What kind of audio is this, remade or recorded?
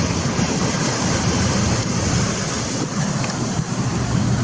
recorded